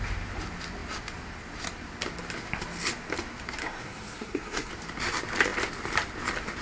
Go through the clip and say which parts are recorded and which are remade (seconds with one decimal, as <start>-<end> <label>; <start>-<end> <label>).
0.0-3.6 recorded; 3.6-4.7 remade; 4.7-6.6 recorded